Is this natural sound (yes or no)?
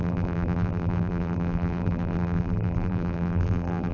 no